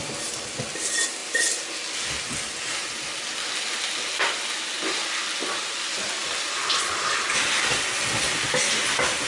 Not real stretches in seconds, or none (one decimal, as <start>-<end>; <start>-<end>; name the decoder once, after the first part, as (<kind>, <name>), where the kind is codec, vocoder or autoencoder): none